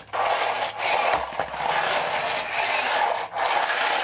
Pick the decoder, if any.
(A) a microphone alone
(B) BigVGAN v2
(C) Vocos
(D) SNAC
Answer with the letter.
A